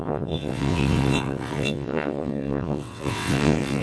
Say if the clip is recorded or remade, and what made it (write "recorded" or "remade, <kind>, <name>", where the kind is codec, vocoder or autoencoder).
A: remade, vocoder, WaveNeXt